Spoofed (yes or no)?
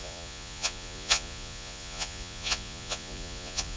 yes